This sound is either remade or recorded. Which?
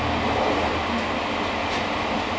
recorded